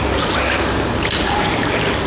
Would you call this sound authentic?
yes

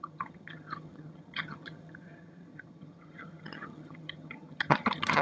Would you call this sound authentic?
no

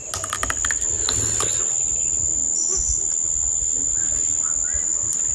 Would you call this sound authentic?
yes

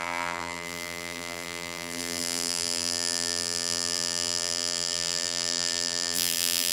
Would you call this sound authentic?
no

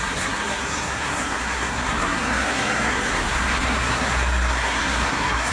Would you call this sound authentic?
no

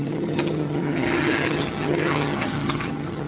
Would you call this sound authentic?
no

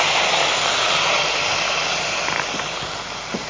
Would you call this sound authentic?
yes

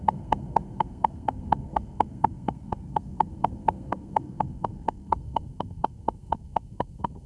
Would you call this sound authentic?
no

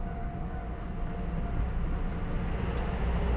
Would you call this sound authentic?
yes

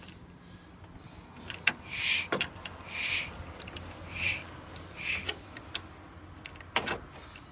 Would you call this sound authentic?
yes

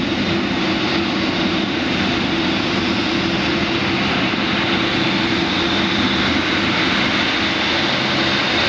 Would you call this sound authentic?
yes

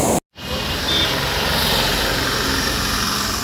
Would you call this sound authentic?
yes